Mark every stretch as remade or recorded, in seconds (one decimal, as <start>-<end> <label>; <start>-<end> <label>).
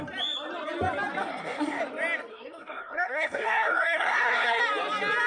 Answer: 0.0-1.2 recorded; 1.2-1.8 remade; 1.8-2.3 recorded; 2.3-4.6 remade; 4.6-5.3 recorded